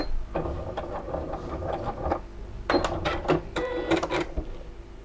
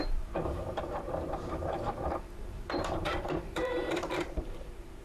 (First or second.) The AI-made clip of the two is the second